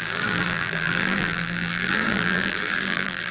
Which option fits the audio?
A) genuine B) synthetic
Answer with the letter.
B